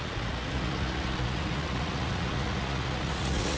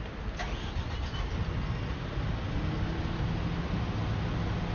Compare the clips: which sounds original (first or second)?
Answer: second